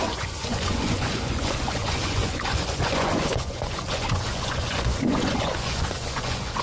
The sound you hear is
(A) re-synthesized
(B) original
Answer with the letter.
A